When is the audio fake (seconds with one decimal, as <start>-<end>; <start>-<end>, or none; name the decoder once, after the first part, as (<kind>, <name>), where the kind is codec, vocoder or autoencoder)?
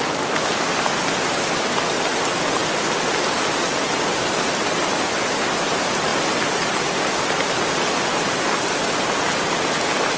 none